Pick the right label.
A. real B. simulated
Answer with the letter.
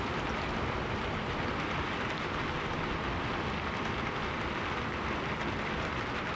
A